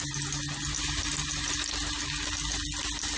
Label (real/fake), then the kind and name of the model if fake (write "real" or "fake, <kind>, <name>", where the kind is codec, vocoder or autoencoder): real